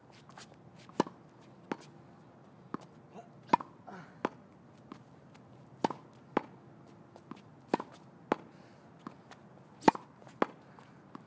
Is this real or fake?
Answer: real